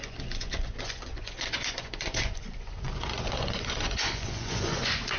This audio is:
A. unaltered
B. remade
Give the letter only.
B